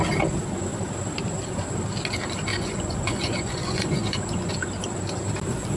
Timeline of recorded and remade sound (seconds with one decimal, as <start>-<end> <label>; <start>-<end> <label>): 0.0-2.5 recorded; 2.5-4.5 remade; 4.5-5.8 recorded